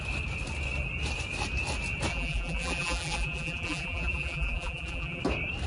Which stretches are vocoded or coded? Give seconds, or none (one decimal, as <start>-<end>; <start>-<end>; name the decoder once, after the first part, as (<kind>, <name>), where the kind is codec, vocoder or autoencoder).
2.1-5.2 (vocoder, BigVGAN v2)